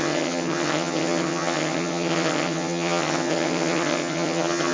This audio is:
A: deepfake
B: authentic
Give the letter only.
A